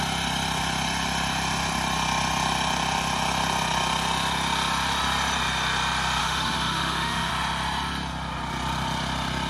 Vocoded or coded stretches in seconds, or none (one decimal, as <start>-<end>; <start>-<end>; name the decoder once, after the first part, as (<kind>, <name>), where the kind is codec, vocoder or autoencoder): 6.2-7.3 (autoencoder, DAC-VAE)